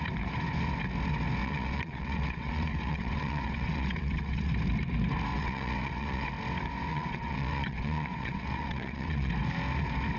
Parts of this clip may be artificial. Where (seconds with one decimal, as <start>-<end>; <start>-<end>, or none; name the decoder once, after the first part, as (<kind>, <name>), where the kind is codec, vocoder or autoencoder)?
1.4-4.5 (vocoder, WaveNeXt); 5.3-6.3; 6.9-9.3